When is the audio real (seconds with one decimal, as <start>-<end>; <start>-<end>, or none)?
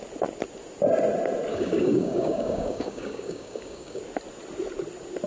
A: 0.0-1.5; 4.0-5.3